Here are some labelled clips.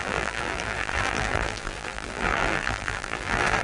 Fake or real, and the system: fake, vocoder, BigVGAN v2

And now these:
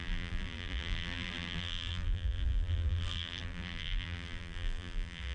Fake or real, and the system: fake, vocoder, BigVGAN v2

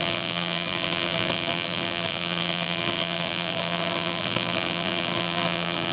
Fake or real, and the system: fake, vocoder, BigVGAN v2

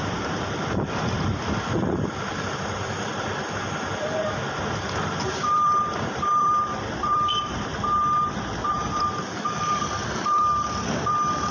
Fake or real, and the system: fake, vocoder, BigVGAN v2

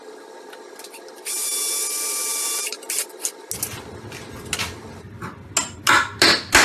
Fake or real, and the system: real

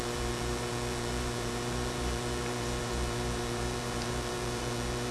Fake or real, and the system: fake, vocoder, BigVGAN v2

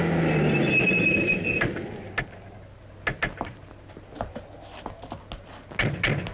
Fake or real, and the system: real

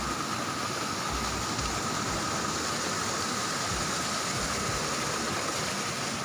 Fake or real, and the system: real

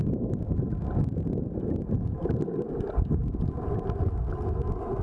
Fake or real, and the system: real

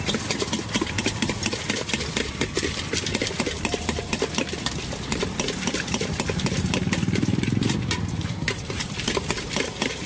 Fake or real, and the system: fake, vocoder, BigVGAN v2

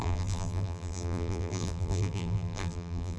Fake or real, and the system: fake, vocoder, BigVGAN v2